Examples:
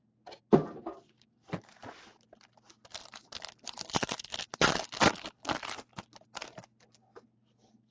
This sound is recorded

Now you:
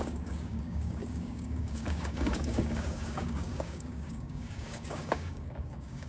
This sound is remade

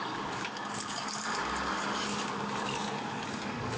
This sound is remade